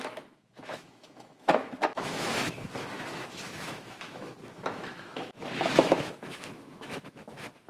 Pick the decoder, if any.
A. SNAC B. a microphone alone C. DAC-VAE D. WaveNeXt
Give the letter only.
C